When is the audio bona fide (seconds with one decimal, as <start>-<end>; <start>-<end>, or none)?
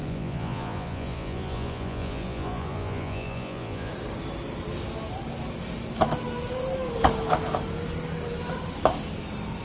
3.9-9.6